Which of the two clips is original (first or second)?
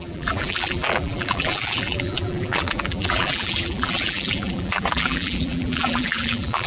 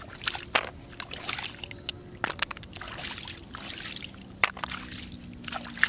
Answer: second